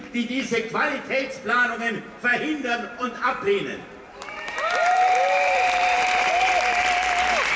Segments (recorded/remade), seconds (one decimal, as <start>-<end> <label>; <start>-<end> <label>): 0.0-1.3 recorded; 1.3-1.9 remade; 1.9-2.3 recorded; 2.3-6.3 remade; 6.3-7.6 recorded